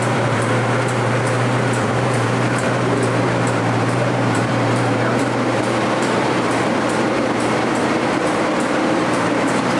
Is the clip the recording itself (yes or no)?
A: no